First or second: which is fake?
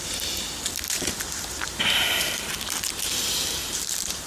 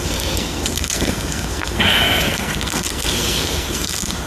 second